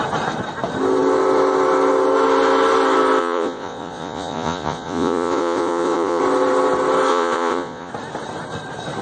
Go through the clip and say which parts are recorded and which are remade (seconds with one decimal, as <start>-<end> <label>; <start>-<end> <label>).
0.0-3.2 recorded; 3.2-6.2 remade; 6.2-7.1 recorded; 7.1-7.9 remade; 7.9-9.0 recorded